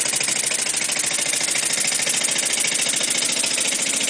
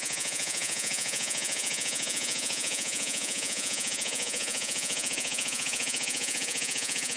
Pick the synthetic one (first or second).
second